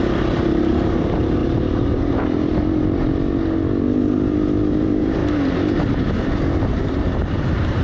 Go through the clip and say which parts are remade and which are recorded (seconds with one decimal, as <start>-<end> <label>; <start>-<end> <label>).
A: 0.0-2.5 remade; 2.5-4.8 recorded; 4.8-5.2 remade; 5.2-6.6 recorded; 6.6-7.8 remade